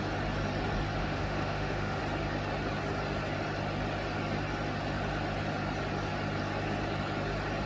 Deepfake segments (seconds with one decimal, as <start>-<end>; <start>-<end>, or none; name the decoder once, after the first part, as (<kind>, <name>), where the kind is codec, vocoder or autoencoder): 1.0-2.0 (autoencoder, DAC-VAE)